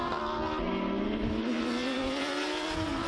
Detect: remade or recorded recorded